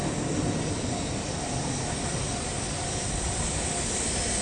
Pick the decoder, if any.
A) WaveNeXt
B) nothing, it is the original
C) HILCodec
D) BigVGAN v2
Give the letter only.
B